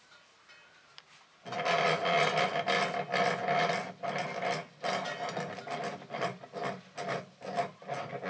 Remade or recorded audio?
recorded